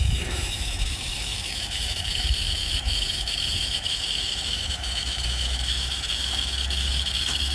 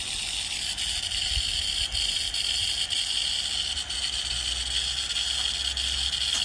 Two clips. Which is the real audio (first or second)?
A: second